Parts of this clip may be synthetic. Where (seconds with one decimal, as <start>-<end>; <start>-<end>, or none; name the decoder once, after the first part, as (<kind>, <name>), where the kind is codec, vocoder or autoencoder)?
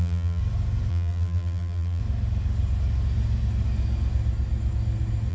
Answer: 0.0-0.4 (vocoder, BigVGAN v2); 0.9-2.0